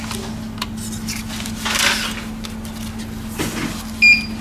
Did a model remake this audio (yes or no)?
no